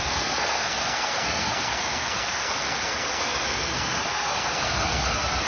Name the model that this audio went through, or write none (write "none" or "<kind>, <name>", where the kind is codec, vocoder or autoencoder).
codec, SNAC